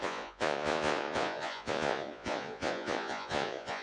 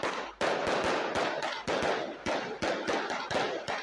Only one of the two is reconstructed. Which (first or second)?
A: first